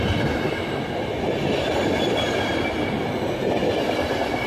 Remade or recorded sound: recorded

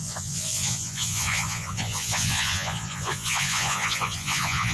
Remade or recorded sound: remade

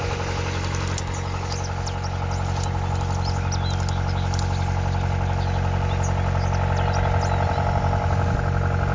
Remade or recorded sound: recorded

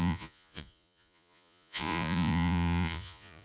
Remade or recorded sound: remade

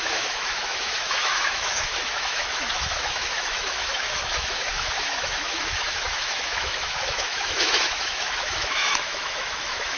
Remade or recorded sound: remade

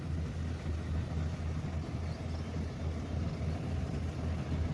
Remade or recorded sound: recorded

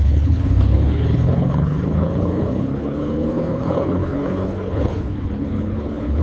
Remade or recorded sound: remade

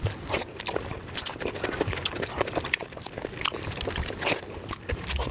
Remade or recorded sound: recorded